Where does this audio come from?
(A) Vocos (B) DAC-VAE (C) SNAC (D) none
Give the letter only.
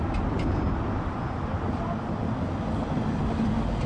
D